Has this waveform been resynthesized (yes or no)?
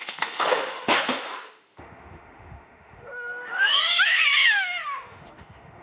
yes